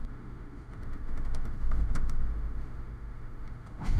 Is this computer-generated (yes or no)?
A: yes